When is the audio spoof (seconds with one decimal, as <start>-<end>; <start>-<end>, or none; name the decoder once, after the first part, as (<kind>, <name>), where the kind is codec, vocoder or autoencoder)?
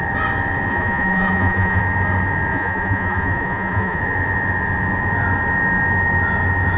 0.7-1.8 (vocoder, Vocos); 2.5-4.0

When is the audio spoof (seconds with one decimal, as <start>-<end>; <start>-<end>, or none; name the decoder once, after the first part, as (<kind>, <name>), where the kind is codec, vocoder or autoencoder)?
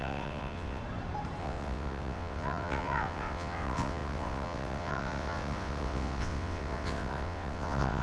0.0-0.8 (vocoder, WaveNeXt); 1.4-8.0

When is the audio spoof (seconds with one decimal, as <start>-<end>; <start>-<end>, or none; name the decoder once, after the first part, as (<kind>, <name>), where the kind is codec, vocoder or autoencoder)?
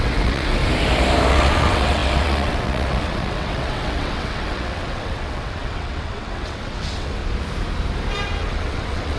0.0-0.6 (vocoder, WaveNeXt); 1.3-7.2; 8.5-9.2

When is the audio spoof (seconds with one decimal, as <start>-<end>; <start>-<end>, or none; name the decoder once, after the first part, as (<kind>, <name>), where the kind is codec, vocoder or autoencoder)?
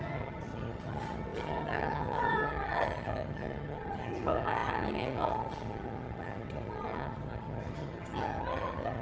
0.0-9.0 (vocoder, HiFi-GAN)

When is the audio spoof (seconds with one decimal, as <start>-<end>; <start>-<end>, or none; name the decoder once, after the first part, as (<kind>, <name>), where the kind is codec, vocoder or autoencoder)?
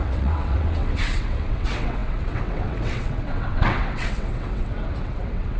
0.0-5.6 (vocoder, WaveNeXt)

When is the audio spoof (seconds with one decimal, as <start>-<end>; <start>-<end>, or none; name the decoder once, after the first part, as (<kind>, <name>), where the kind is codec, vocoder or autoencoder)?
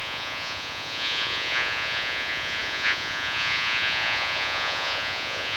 0.0-5.6 (vocoder, Vocos)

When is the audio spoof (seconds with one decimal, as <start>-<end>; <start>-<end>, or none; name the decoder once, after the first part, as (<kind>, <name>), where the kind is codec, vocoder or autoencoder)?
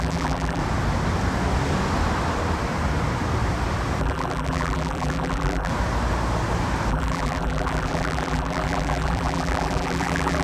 0.0-0.6 (vocoder, BigVGAN v2); 4.0-5.7; 6.9-10.4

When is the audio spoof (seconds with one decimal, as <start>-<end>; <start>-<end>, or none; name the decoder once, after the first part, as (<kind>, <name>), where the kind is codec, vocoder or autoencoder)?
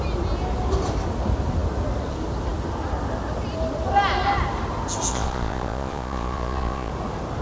5.1-6.9 (vocoder, Vocos)